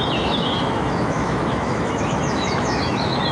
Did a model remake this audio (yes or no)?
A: yes